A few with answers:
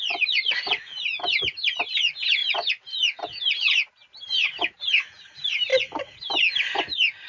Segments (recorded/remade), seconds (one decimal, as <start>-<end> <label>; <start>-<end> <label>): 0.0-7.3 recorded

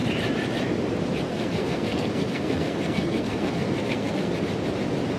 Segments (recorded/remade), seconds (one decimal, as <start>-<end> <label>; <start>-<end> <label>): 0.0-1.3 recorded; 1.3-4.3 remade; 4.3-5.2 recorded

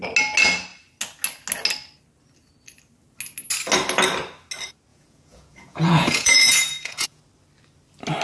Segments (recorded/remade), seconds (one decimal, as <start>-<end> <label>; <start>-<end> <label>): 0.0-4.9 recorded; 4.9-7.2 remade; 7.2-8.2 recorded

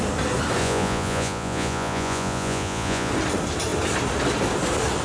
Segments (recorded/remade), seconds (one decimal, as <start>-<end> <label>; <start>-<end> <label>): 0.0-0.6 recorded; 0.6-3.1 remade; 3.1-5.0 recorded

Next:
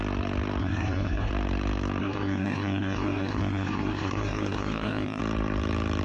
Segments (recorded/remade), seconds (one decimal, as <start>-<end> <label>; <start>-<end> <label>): 0.0-0.6 recorded; 0.6-1.3 remade; 1.3-2.0 recorded; 2.0-5.2 remade; 5.2-6.0 recorded

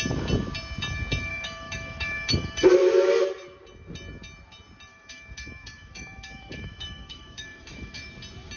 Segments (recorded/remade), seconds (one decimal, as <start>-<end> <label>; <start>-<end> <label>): 0.0-1.3 recorded; 1.3-2.7 remade; 2.7-4.9 recorded; 4.9-8.1 remade; 8.1-8.6 recorded

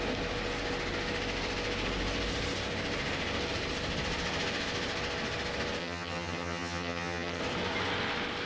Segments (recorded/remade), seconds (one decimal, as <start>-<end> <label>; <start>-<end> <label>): 0.0-5.8 recorded; 5.8-7.4 remade; 7.4-8.5 recorded

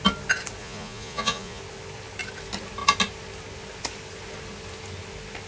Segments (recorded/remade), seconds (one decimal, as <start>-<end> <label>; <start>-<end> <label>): 0.0-0.6 recorded; 0.6-1.6 remade; 1.6-5.5 recorded